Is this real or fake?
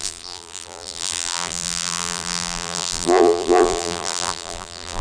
fake